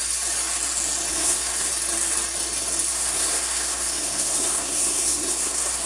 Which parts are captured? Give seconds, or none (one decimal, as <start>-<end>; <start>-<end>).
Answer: 0.0-1.1; 1.7-2.9